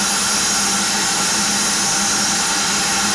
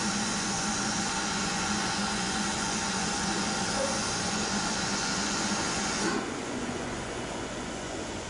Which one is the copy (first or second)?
second